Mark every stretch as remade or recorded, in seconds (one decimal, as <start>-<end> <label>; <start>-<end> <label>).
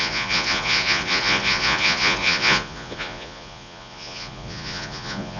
0.0-5.4 remade